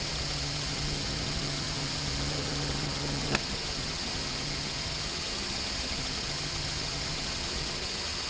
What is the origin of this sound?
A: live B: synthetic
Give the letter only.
B